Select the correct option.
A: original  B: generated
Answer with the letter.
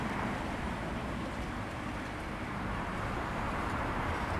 B